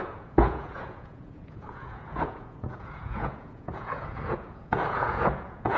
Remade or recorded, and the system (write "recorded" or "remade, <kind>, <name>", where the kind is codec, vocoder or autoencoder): remade, vocoder, Vocos